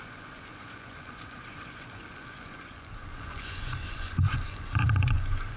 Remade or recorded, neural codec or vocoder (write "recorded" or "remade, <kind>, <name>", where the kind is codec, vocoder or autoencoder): remade, vocoder, Vocos